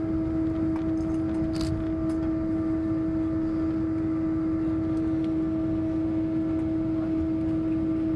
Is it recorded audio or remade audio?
recorded